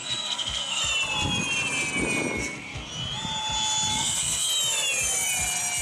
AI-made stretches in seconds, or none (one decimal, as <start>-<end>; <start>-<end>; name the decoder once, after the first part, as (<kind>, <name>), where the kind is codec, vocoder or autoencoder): 0.0-0.8 (codec, SNAC); 2.4-2.9; 3.9-4.5